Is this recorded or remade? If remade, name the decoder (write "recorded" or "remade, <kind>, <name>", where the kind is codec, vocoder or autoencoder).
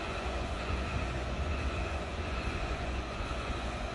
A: remade, vocoder, Vocos